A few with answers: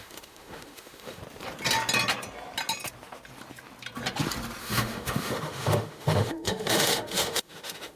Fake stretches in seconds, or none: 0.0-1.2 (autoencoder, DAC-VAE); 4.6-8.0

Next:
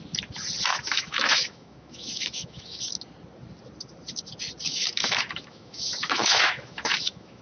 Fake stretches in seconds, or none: 0.7-2.8 (autoencoder, DAC-VAE); 4.7-7.4